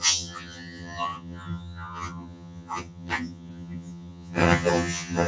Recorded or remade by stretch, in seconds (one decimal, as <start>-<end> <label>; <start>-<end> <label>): 0.0-5.3 remade